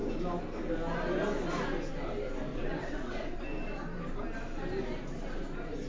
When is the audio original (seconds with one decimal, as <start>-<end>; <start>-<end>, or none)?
0.0-2.5; 3.4-5.9